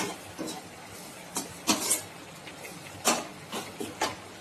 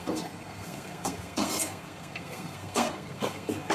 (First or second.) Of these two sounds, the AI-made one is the second